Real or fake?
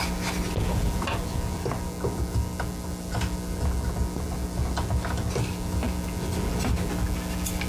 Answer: real